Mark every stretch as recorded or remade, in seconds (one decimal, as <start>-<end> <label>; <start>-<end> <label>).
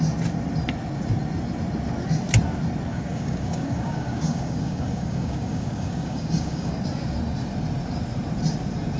0.0-2.9 recorded; 2.9-6.7 remade; 6.7-9.0 recorded